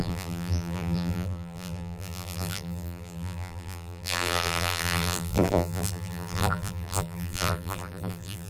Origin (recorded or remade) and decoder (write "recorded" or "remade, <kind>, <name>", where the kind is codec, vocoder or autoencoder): remade, vocoder, BigVGAN v2